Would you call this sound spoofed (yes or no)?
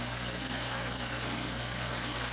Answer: yes